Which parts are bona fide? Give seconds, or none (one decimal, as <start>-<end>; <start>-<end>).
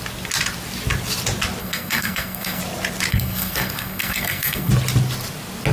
0.0-1.6; 2.6-3.1; 4.7-5.7